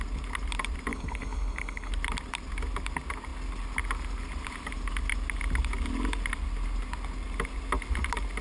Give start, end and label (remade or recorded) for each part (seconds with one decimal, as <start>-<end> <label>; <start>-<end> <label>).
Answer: 0.0-0.9 recorded; 0.9-1.9 remade; 1.9-8.4 recorded